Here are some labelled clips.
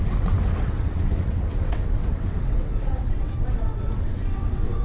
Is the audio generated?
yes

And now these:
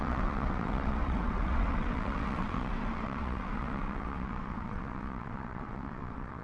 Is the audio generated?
yes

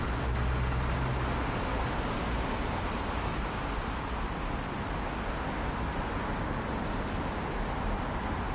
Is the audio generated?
no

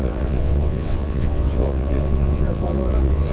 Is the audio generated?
yes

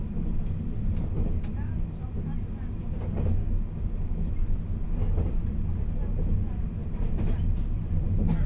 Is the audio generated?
no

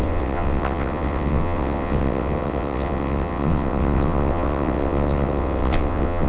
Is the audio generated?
yes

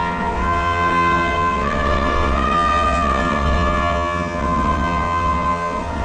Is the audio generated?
yes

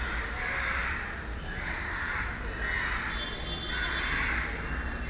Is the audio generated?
no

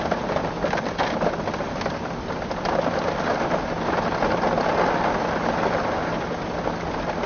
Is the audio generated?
no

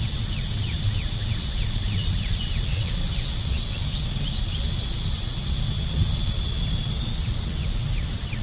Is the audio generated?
yes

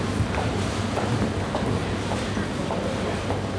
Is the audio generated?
no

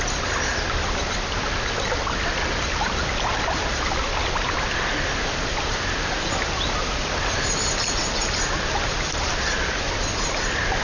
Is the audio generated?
no